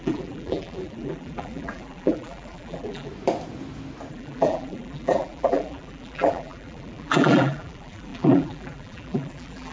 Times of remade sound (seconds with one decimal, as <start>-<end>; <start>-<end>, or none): 0.0-3.1; 4.1-9.7